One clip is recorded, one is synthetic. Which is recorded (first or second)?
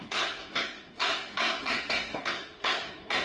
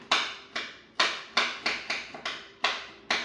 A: second